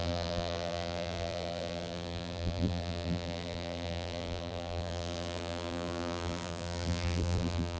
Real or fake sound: fake